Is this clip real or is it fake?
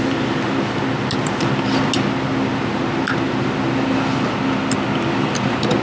real